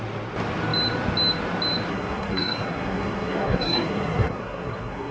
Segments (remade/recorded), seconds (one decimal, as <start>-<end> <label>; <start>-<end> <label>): 0.0-1.9 recorded; 1.9-5.1 remade